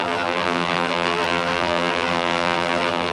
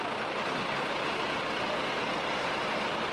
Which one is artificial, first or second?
first